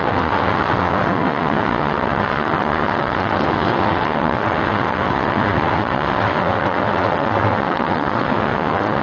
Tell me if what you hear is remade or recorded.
remade